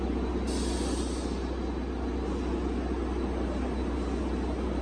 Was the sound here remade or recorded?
recorded